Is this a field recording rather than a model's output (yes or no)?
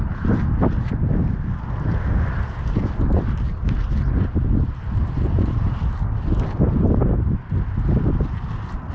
yes